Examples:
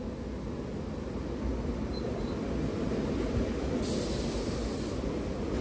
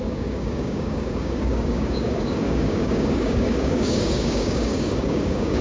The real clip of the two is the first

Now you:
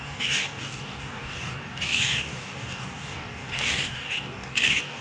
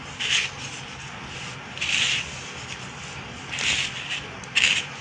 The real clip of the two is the second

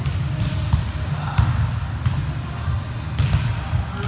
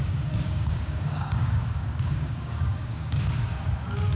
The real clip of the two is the first